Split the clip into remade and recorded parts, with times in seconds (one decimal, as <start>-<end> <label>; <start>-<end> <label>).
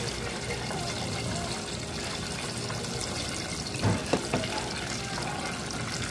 0.0-6.1 recorded